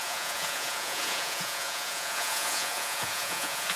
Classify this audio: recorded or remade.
remade